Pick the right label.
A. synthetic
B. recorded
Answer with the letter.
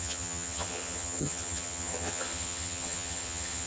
A